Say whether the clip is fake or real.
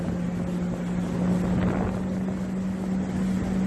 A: real